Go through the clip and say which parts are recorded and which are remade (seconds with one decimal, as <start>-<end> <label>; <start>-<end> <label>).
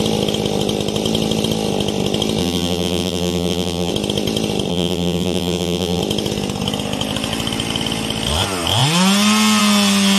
0.0-2.4 recorded; 2.4-3.9 remade; 3.9-4.7 recorded; 4.7-6.0 remade; 6.0-10.2 recorded